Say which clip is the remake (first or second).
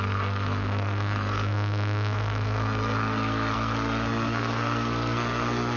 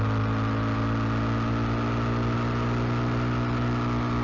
first